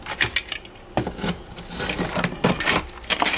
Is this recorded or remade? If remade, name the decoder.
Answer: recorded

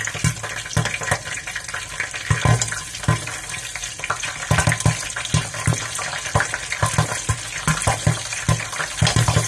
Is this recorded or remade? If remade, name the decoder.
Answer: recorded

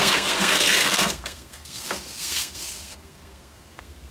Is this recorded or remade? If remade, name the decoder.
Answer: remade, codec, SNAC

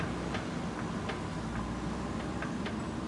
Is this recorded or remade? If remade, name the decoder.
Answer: recorded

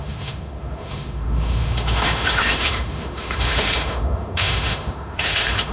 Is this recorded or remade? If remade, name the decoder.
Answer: remade, autoencoder, DAC-VAE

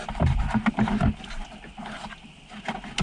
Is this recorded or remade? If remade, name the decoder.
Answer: recorded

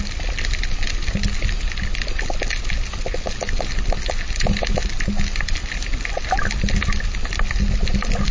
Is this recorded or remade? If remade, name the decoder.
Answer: recorded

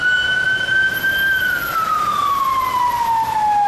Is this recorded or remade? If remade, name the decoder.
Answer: recorded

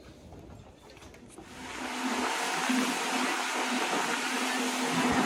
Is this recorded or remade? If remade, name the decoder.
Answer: recorded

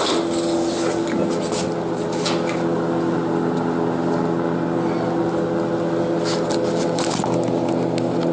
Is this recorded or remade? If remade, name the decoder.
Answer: recorded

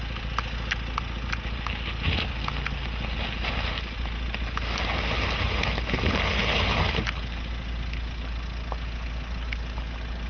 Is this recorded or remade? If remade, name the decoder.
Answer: recorded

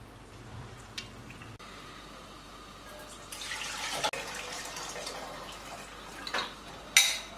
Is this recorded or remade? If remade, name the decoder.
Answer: recorded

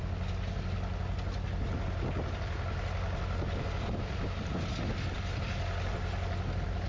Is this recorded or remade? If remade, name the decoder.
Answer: recorded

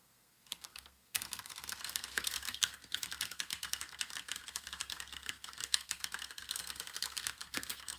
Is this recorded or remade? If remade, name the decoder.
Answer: remade, codec, SNAC